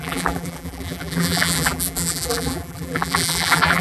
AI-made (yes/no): yes